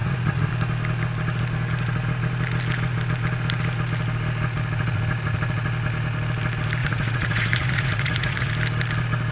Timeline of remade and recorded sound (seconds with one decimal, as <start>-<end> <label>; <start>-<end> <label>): 0.0-0.5 remade; 0.5-6.8 recorded; 6.8-8.5 remade; 8.5-9.3 recorded